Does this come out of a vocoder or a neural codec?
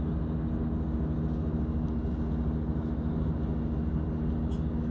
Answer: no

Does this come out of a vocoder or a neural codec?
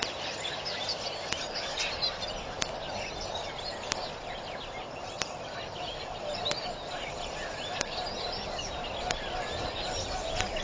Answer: no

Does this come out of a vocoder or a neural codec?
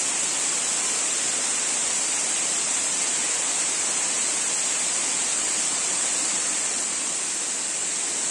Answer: no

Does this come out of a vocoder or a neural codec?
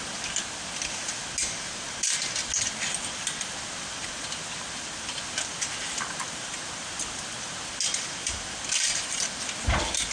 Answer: no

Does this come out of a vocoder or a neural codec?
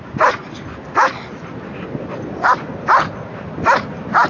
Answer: no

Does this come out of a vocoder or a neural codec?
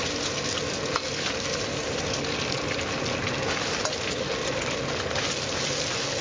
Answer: no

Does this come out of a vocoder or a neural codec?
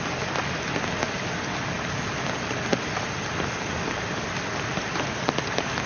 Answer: no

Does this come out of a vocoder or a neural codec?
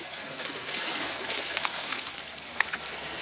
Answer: yes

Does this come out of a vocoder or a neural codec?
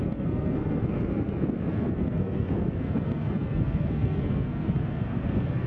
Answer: yes